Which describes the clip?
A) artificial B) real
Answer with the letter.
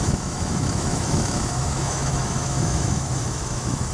A